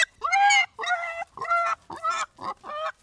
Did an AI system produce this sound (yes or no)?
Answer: no